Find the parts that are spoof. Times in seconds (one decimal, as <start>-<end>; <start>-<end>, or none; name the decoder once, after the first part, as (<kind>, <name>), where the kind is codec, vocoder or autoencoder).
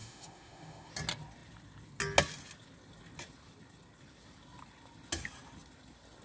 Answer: 0.0-0.9 (autoencoder, DAC-VAE)